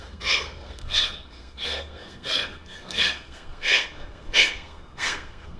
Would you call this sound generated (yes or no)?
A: yes